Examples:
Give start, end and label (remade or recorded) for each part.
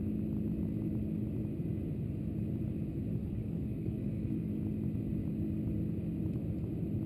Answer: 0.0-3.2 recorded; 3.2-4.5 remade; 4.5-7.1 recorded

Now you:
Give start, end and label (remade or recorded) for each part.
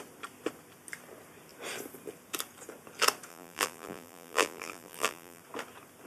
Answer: 0.0-3.3 recorded; 3.3-5.4 remade; 5.4-6.1 recorded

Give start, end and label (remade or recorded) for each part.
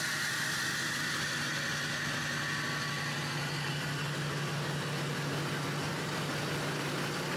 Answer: 0.0-7.4 recorded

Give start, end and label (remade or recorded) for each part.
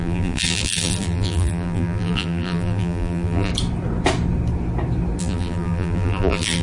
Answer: 0.0-3.5 remade; 3.5-5.2 recorded; 5.2-6.6 remade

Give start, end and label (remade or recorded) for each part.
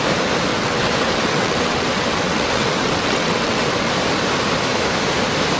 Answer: 0.0-0.5 recorded; 0.5-3.9 remade; 3.9-5.6 recorded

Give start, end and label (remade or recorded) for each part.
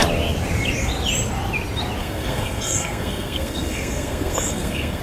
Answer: 0.0-2.0 recorded; 2.0-5.0 remade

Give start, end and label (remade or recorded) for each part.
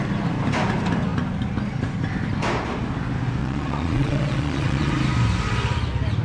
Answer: 0.0-3.4 recorded; 3.4-4.9 remade; 4.9-6.2 recorded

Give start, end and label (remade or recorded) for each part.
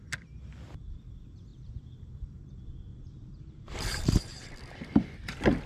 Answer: 0.0-1.5 recorded; 1.5-2.5 remade; 2.5-2.9 recorded; 2.9-4.5 remade; 4.5-5.7 recorded